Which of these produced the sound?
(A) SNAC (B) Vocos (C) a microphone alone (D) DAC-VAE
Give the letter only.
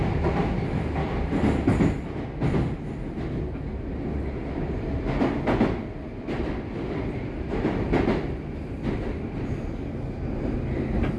C